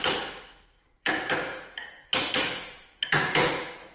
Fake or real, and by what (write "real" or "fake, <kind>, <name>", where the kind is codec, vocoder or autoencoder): fake, autoencoder, DAC-VAE